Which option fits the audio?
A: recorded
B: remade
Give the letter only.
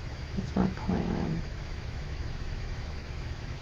B